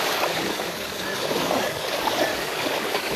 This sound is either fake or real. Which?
fake